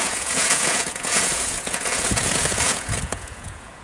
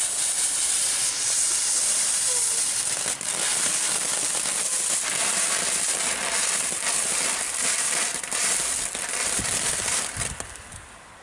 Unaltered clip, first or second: second